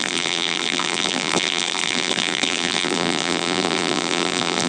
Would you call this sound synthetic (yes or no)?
yes